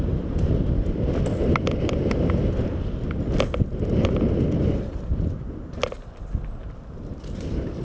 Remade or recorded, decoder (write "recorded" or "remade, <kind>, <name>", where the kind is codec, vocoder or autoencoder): recorded